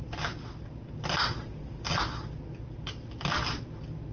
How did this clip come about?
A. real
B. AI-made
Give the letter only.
A